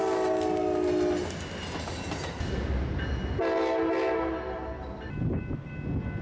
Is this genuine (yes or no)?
yes